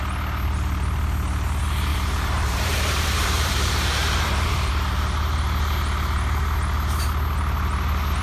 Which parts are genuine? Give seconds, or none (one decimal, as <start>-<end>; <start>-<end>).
0.0-1.9; 4.7-8.2